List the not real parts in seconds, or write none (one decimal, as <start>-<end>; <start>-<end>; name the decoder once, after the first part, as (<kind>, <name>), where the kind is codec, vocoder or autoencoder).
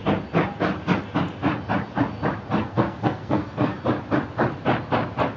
2.6-3.7 (codec, SNAC)